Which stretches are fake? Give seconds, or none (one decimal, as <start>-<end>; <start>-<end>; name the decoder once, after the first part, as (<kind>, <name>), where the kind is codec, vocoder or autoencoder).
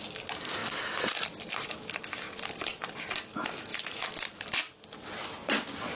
0.6-3.0 (vocoder, BigVGAN v2)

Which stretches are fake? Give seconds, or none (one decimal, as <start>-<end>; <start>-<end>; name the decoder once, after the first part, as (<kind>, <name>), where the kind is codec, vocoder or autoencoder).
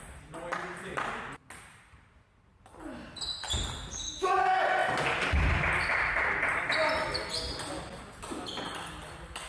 none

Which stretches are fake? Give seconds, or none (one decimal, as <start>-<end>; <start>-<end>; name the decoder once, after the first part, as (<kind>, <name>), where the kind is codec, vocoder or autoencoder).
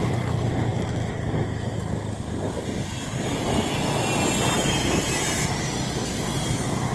none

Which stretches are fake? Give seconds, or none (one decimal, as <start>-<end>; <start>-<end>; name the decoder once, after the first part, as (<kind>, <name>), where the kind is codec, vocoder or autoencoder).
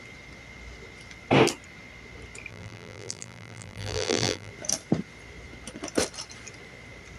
2.5-4.5 (vocoder, BigVGAN v2)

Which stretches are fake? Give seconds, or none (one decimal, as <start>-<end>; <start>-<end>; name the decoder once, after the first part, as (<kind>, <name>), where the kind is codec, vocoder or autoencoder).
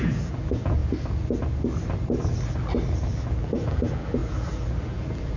0.0-0.8 (vocoder, BigVGAN v2); 3.0-5.4